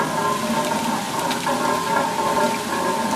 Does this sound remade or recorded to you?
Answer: recorded